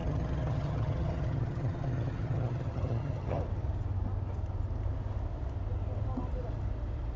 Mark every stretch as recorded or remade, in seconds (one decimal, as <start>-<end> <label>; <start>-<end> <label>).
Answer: 0.0-3.4 remade; 3.4-7.2 recorded